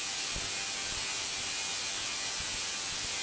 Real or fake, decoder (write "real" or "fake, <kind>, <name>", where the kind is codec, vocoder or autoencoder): real